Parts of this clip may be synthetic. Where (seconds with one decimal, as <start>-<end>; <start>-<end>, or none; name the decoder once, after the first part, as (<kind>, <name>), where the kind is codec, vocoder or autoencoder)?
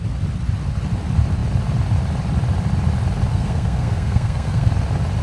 3.3-4.7 (codec, SNAC)